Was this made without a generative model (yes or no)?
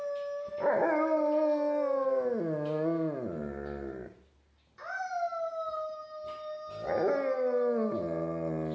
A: yes